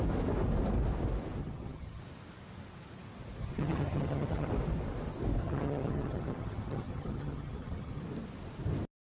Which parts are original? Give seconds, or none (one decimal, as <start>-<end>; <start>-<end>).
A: 0.0-1.4; 2.0-3.4; 4.5-5.4; 8.0-9.1

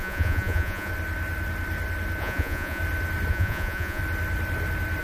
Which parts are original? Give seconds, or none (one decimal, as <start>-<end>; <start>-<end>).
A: 0.9-2.2; 2.8-3.3; 4.0-5.0

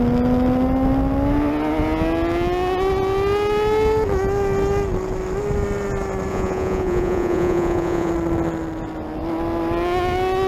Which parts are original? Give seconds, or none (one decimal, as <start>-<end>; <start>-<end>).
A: 0.0-6.3; 8.1-10.5

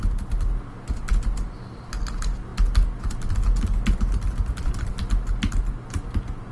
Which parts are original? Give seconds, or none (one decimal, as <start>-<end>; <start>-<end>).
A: 0.0-6.5

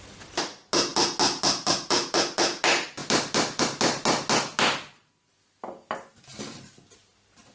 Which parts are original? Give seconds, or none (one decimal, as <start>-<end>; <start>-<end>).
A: 0.0-7.5